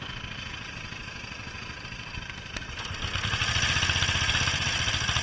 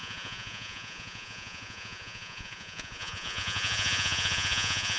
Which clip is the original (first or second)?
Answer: first